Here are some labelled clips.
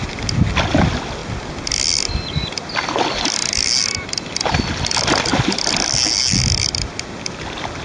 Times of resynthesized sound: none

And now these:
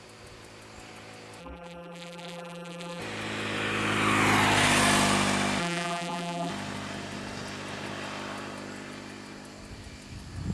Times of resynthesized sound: 1.4-3.0; 5.6-6.5

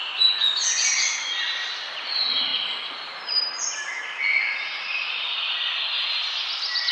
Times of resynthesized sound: none

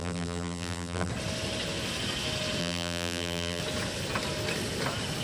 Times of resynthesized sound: 0.0-1.1; 2.6-3.6